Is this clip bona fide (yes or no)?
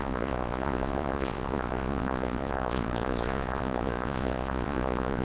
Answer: no